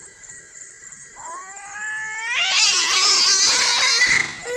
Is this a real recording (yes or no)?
yes